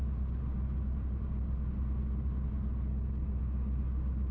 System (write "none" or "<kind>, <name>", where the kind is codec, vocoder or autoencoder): none